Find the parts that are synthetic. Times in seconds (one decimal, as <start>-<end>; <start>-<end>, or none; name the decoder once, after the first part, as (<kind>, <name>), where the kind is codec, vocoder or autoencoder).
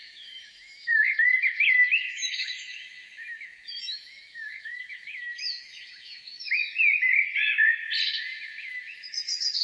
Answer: 0.0-6.6 (autoencoder, DAC-VAE); 8.6-9.6